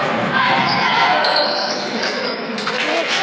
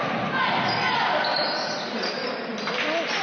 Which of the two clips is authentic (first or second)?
second